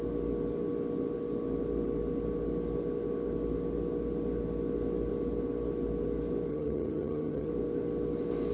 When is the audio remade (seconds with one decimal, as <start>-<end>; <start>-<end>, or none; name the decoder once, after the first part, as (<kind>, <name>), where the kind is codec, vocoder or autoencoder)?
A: 6.5-7.5 (vocoder, HiFi-GAN)